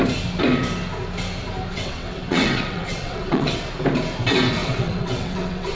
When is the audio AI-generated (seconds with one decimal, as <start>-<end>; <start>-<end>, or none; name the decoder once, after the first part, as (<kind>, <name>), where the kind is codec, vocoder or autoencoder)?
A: 1.7-3.6 (vocoder, WaveNeXt); 4.6-5.8